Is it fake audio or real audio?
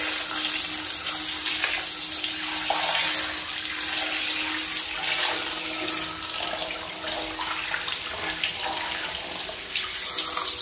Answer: real